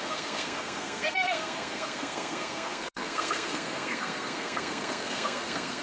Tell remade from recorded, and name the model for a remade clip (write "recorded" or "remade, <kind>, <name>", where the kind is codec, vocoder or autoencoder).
remade, codec, SNAC